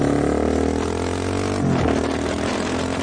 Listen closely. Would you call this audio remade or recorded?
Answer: recorded